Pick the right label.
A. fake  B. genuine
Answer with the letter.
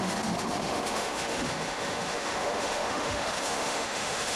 A